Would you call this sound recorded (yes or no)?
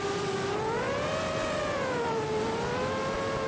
yes